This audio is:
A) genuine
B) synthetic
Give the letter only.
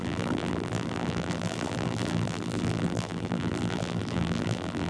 B